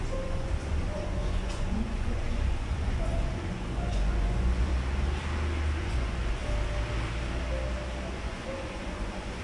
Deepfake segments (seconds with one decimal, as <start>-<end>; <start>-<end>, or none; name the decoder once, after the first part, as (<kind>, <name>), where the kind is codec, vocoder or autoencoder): 0.0-4.7 (vocoder, Vocos); 5.8-6.4; 8.2-9.4